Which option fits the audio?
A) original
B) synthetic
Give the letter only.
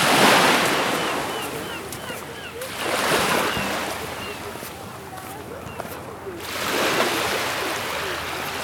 A